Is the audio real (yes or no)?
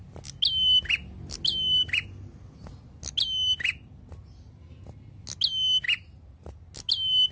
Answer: yes